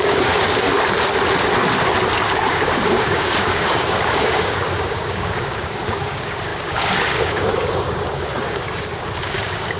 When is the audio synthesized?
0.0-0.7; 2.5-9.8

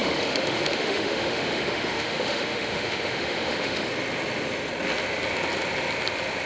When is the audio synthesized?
0.0-3.9

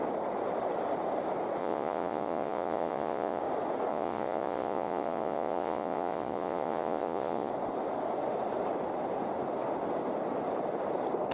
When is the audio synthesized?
1.6-3.4; 3.9-7.5